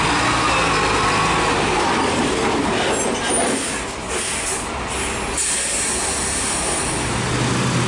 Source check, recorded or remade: recorded